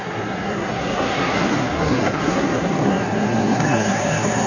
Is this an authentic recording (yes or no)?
no